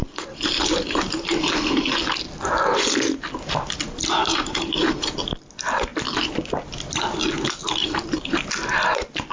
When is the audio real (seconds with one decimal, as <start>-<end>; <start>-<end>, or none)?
1.7-4.2; 5.2-7.8; 8.4-9.3

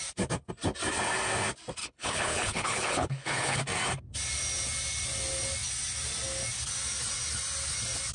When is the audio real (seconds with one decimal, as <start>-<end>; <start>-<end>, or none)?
0.0-1.8; 3.6-8.1

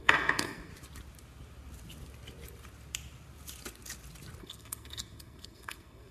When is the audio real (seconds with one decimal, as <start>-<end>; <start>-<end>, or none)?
0.7-4.4